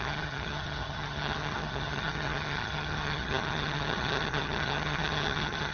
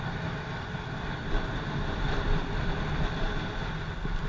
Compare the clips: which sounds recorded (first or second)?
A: second